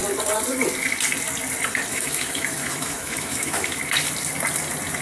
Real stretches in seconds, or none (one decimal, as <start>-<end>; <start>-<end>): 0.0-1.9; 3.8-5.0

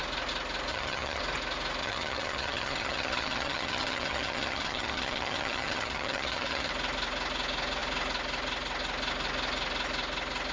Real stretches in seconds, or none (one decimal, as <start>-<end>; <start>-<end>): 0.0-0.7; 1.2-1.8; 6.7-10.5

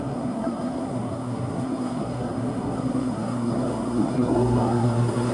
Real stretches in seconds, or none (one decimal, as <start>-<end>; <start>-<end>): none